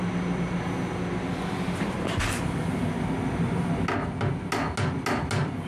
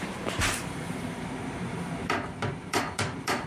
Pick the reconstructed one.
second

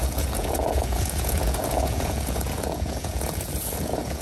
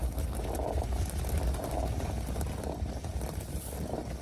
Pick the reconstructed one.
first